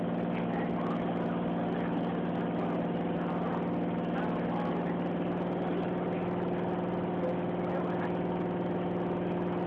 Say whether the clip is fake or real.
real